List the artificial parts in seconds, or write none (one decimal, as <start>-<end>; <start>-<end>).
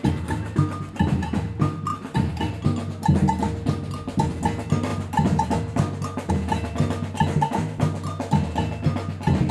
1.9-2.5